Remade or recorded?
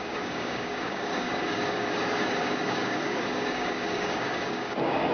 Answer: remade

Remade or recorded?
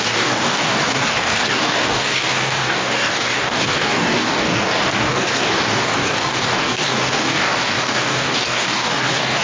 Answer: remade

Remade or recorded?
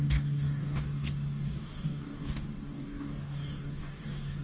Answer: remade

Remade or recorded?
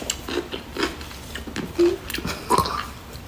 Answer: recorded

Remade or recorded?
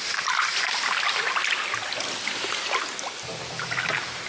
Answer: recorded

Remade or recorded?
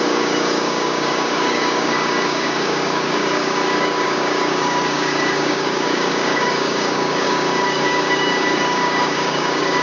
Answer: remade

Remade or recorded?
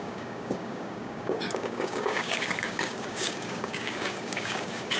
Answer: remade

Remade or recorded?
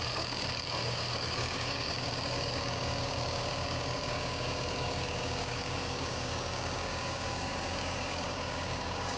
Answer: remade